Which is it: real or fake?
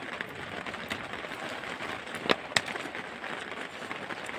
real